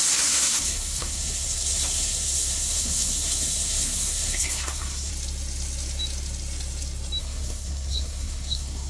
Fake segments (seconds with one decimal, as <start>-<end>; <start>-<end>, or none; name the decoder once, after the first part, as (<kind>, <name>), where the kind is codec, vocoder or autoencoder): 0.0-5.1 (codec, SNAC); 7.2-8.9